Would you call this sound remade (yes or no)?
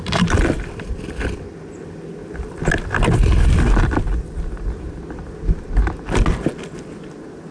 no